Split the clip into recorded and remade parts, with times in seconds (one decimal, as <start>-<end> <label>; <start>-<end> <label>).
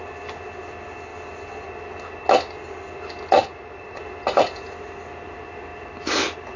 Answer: 0.0-3.4 recorded; 3.4-4.0 remade; 4.0-6.6 recorded